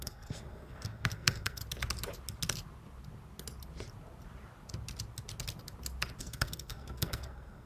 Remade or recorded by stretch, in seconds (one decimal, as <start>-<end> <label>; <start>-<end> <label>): 0.0-1.6 remade; 1.6-6.2 recorded; 6.2-7.7 remade